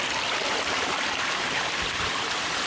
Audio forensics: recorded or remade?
recorded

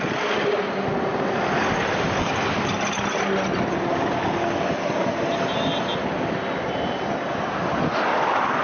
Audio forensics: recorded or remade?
recorded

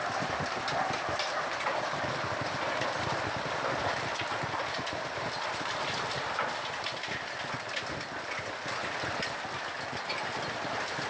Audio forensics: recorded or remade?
recorded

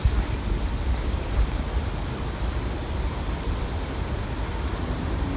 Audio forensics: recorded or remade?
recorded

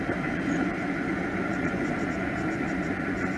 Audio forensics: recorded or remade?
remade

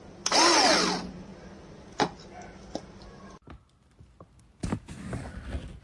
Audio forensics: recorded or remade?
recorded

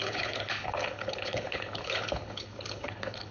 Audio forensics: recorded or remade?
remade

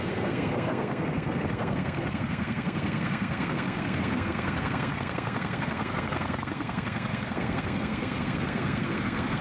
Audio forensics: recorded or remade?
remade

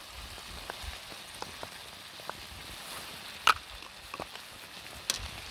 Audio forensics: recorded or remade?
recorded